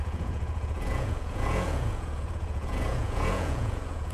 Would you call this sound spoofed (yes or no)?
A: yes